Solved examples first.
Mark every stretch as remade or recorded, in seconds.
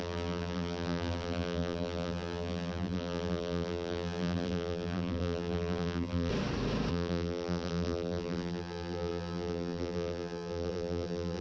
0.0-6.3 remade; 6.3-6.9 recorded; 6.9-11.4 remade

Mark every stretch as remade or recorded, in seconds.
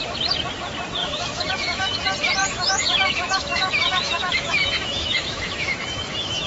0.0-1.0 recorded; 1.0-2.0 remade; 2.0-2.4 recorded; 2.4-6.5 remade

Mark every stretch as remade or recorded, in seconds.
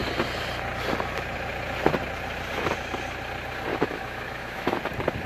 0.0-3.7 recorded; 3.7-4.8 remade; 4.8-5.3 recorded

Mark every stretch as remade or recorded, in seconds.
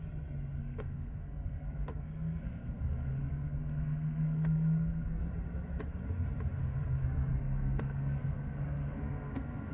0.0-0.6 recorded; 0.6-5.2 remade; 5.2-6.6 recorded; 6.6-9.7 remade